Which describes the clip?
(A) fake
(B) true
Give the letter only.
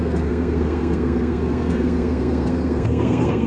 A